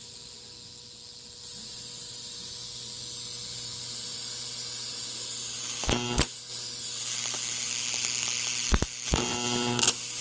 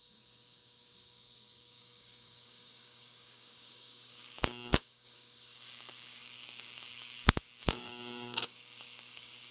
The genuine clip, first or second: first